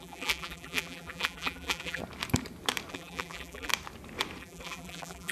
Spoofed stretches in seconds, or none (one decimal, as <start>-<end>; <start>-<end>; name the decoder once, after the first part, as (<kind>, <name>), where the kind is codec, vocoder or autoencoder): 0.0-2.0 (vocoder, BigVGAN v2); 2.9-3.7; 4.4-5.3